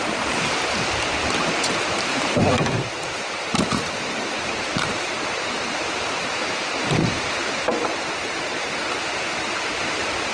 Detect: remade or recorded remade